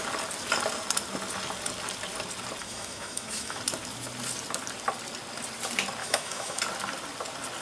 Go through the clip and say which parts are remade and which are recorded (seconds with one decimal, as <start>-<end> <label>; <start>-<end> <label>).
0.0-2.6 recorded; 2.6-3.6 remade; 3.6-6.0 recorded; 6.0-6.6 remade; 6.6-7.6 recorded